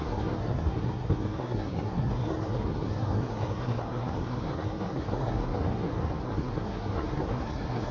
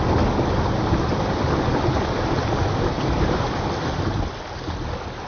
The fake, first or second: first